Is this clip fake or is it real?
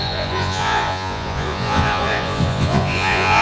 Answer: fake